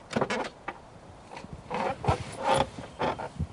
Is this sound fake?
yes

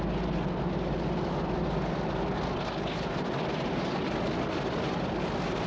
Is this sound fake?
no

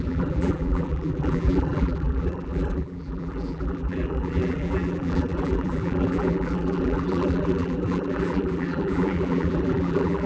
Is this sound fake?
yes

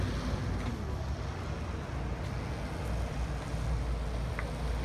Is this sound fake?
no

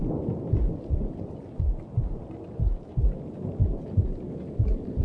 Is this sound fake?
no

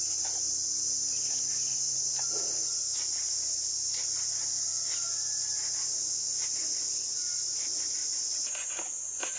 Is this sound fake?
no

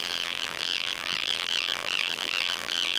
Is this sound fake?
yes